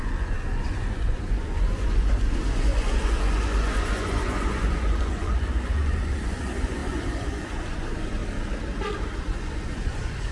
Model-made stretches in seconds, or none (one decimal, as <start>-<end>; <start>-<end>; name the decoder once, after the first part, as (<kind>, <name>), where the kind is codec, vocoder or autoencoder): 0.0-8.2 (vocoder, Vocos); 9.2-10.3